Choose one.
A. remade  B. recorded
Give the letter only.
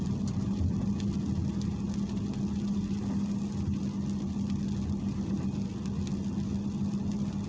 B